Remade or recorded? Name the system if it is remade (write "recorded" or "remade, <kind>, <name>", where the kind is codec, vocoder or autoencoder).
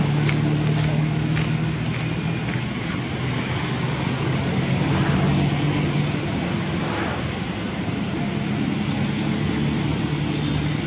recorded